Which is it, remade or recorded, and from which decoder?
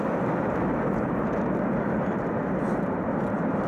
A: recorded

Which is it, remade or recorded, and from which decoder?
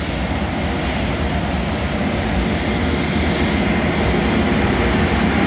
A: recorded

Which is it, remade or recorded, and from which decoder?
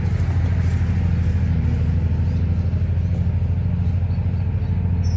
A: recorded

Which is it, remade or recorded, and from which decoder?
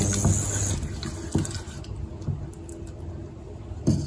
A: recorded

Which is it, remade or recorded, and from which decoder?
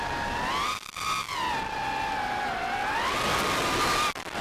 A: recorded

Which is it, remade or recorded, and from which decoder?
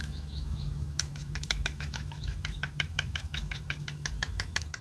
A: remade, autoencoder, DAC-VAE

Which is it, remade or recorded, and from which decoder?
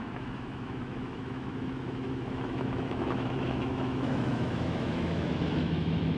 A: remade, autoencoder, DAC-VAE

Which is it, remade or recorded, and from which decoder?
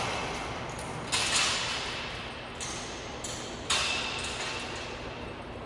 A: recorded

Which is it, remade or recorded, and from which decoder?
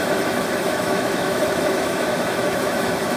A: remade, autoencoder, DAC-VAE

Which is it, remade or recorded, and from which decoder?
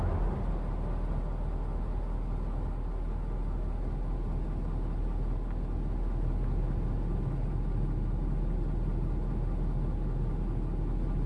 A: recorded